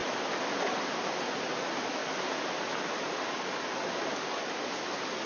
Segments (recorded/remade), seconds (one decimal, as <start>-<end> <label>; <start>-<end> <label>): 0.0-5.3 recorded